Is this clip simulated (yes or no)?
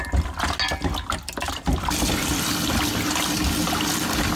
no